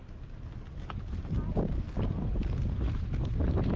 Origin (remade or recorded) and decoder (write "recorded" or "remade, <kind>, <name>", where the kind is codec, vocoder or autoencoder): recorded